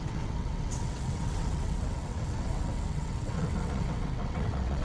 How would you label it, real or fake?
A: fake